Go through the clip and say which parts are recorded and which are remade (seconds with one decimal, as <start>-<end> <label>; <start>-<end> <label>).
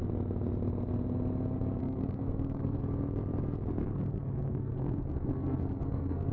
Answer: 0.0-1.8 recorded; 1.8-2.8 remade; 2.8-3.8 recorded; 3.8-6.3 remade